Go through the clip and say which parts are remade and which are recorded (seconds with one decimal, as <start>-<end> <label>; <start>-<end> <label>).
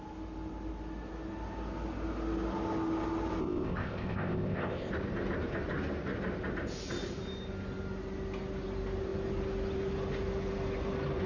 0.0-3.4 recorded; 3.4-4.9 remade; 4.9-11.3 recorded